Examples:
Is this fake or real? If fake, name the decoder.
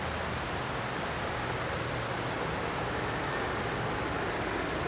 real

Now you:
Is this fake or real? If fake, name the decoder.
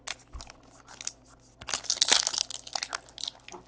real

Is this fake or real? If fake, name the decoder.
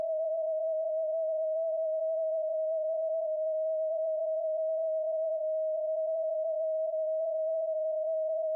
fake, vocoder, BigVGAN v2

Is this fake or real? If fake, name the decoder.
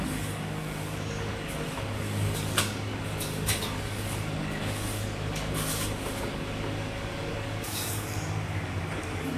fake, codec, DAC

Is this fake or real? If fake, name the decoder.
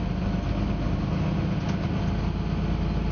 real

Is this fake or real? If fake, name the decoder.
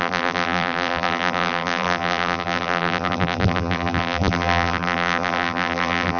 fake, vocoder, BigVGAN v2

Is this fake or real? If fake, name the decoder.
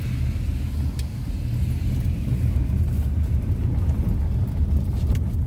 real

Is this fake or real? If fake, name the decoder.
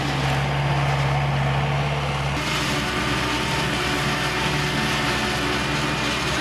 real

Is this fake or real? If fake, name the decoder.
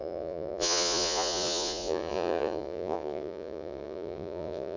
fake, vocoder, Vocos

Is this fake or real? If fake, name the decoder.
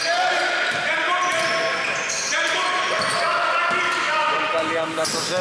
real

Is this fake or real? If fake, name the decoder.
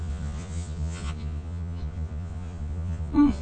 fake, vocoder, Vocos